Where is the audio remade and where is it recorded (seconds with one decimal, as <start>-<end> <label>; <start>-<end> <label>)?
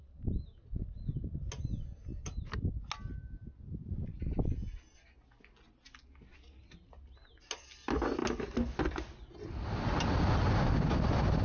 0.0-0.6 remade; 0.6-2.1 recorded; 2.1-2.8 remade; 2.8-11.4 recorded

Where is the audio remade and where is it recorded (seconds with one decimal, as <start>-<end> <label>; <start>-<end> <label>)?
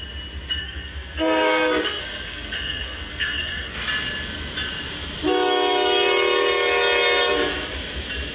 0.0-0.6 recorded; 0.6-3.8 remade; 3.8-8.3 recorded